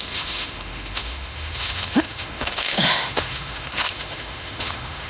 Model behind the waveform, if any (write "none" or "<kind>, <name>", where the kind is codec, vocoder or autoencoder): autoencoder, DAC-VAE